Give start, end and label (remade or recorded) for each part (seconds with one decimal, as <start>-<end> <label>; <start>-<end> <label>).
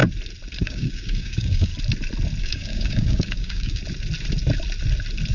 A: 0.0-0.6 recorded; 0.6-1.7 remade; 1.7-2.4 recorded; 2.4-3.8 remade; 3.8-5.3 recorded